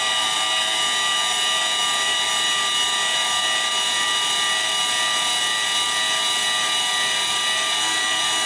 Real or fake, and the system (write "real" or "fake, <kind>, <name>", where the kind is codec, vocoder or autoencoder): real